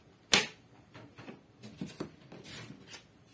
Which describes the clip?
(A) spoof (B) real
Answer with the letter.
B